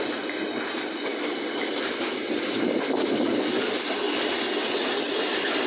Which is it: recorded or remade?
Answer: recorded